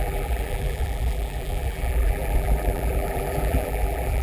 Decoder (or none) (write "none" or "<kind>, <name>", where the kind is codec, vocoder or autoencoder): vocoder, BigVGAN v2